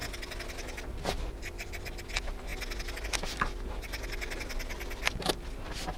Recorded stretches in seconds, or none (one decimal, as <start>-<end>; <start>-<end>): 0.0-6.0